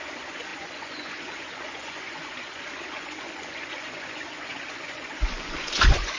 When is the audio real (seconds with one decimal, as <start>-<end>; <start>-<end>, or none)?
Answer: none